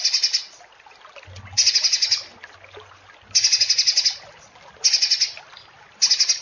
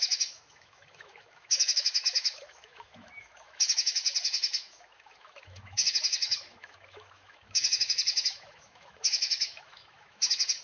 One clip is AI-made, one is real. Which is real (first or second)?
first